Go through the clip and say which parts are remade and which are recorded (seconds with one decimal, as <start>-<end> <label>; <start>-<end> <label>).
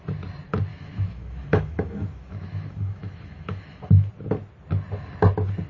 0.0-0.7 recorded; 0.7-4.1 remade; 4.1-5.7 recorded